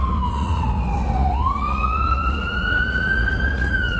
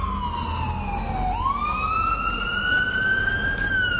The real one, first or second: second